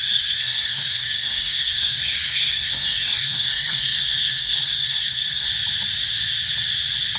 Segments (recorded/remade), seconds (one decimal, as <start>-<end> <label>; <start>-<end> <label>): 0.0-5.5 remade; 5.5-7.2 recorded